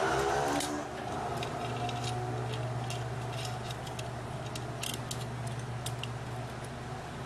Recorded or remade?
recorded